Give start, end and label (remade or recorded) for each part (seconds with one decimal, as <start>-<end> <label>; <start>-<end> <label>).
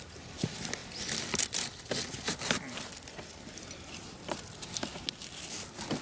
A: 0.0-6.0 recorded